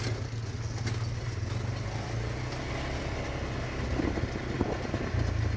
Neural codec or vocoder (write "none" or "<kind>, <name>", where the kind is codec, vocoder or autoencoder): none